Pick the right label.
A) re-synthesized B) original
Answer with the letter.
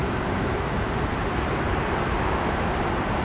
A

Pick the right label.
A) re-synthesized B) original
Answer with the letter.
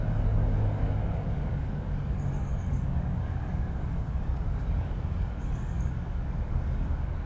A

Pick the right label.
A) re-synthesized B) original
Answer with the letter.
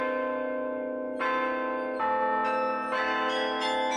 B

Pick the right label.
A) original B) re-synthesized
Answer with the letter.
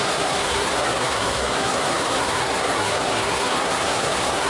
B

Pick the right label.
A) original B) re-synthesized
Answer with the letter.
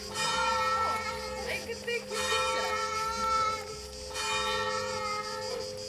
A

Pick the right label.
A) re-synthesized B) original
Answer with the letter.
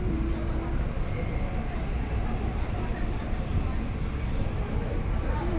B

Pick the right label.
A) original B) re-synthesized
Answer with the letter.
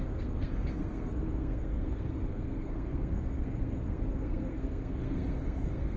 B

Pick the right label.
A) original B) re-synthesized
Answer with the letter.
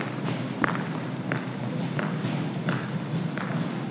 A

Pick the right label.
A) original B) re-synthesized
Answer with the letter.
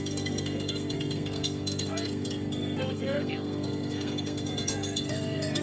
B